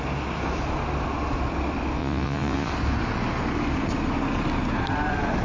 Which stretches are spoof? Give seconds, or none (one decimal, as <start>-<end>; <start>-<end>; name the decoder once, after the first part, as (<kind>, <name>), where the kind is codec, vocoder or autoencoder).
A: 2.0-2.7 (vocoder, Vocos)